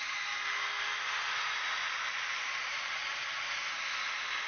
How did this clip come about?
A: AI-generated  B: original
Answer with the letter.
B